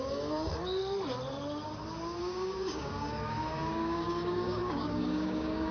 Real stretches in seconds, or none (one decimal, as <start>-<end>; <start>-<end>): 0.5-2.2